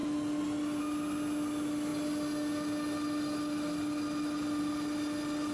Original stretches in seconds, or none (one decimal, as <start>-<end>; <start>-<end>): 0.0-5.5